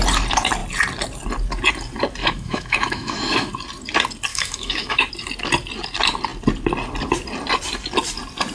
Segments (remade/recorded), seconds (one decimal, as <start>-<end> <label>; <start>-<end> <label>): 0.0-2.2 recorded; 2.2-3.5 remade; 3.5-4.3 recorded; 4.3-5.1 remade; 5.1-8.5 recorded